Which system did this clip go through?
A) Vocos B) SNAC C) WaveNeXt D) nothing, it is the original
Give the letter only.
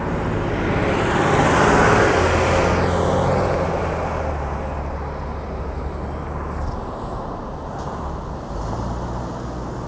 D